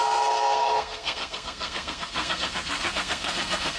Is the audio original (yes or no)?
no